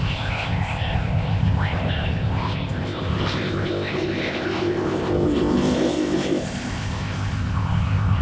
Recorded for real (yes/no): no